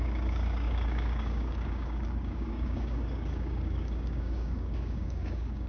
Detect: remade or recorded remade